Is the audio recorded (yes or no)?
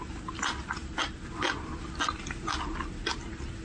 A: yes